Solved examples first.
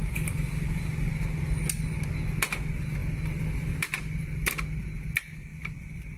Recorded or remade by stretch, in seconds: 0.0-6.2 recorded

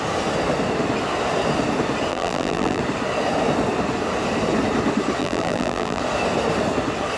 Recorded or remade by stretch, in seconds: 0.0-2.1 recorded; 2.1-2.8 remade; 2.8-5.2 recorded; 5.2-6.0 remade; 6.0-7.2 recorded